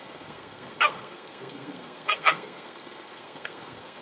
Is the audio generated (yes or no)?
yes